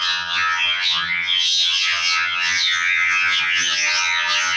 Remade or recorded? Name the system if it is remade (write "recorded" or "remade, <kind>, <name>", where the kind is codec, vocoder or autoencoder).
remade, vocoder, HiFi-GAN